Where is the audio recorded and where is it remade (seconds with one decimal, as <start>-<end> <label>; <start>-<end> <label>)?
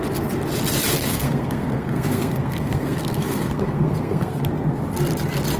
0.0-1.0 recorded; 1.0-4.4 remade; 4.4-5.6 recorded